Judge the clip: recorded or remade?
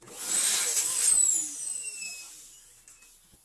recorded